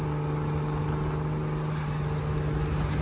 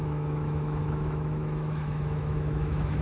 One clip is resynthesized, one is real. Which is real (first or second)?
first